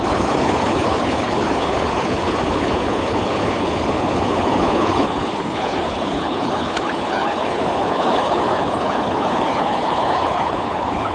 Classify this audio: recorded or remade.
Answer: remade